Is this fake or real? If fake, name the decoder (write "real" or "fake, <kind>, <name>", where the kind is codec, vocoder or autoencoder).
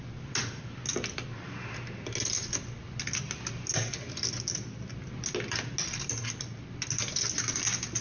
real